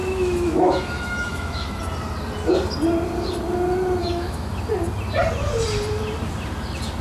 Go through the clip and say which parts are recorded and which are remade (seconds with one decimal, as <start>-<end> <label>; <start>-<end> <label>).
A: 0.0-1.8 remade; 1.8-4.0 recorded; 4.0-4.6 remade; 4.6-7.0 recorded